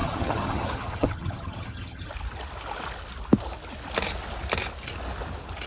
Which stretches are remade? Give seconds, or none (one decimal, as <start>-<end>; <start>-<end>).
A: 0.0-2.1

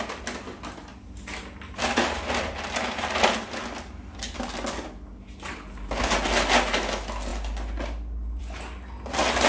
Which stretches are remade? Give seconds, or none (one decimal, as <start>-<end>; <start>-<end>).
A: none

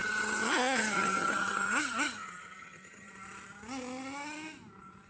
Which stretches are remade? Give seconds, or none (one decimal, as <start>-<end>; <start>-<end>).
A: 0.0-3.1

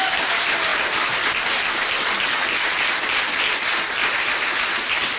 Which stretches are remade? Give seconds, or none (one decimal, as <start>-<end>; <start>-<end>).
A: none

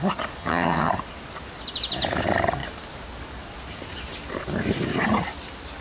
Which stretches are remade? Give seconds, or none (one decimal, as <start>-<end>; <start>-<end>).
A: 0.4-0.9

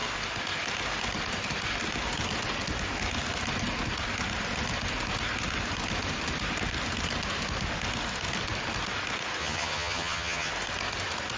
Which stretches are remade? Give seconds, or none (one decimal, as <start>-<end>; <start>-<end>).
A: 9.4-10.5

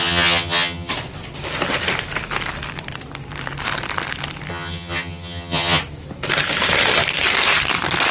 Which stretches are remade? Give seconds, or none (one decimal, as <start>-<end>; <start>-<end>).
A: 0.0-0.9; 4.5-5.8